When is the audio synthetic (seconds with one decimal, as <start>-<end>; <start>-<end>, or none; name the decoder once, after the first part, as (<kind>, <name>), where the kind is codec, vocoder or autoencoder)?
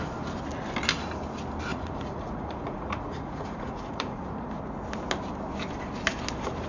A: 1.7-4.5 (vocoder, Vocos)